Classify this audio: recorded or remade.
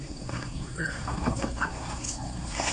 remade